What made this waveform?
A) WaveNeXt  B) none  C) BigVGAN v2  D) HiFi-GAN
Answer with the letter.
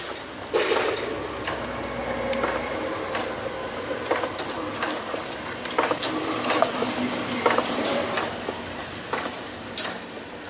B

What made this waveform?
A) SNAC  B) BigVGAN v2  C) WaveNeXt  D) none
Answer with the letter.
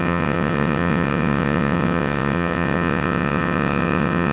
C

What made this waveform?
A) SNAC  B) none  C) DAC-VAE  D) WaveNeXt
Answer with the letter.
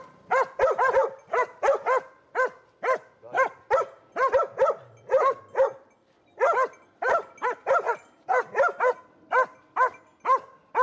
B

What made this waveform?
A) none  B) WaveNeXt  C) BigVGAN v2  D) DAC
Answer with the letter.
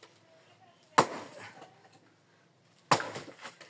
A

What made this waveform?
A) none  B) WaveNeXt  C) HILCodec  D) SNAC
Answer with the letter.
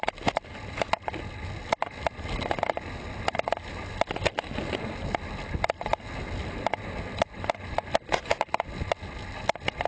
A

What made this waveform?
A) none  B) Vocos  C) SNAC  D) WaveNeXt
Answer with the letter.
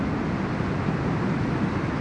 A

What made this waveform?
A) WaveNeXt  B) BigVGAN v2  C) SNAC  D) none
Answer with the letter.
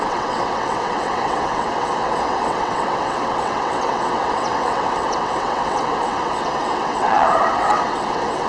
A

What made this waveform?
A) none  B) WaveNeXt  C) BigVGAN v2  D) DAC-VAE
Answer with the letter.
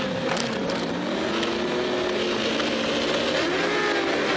A